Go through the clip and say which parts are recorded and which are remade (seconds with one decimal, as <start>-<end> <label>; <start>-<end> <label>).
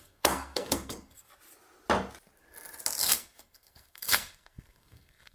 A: 0.0-1.3 remade; 1.3-3.0 recorded; 3.0-5.3 remade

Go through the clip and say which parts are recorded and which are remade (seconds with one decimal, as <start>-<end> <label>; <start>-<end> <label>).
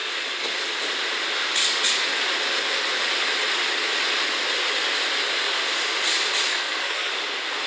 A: 0.0-6.5 recorded; 6.5-7.1 remade; 7.1-7.7 recorded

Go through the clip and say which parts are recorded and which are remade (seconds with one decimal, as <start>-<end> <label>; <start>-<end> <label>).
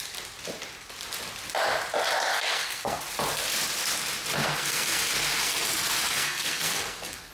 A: 0.0-2.3 recorded; 2.3-3.0 remade; 3.0-4.4 recorded; 4.4-7.3 remade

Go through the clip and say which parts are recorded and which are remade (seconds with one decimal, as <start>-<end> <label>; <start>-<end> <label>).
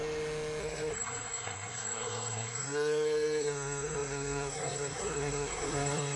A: 0.0-0.6 recorded; 0.6-6.2 remade